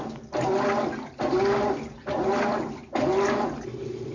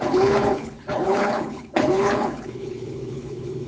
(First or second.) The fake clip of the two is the second